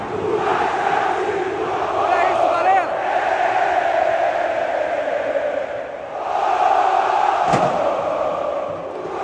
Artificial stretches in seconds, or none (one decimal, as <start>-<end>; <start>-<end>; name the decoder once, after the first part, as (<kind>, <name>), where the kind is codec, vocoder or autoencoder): none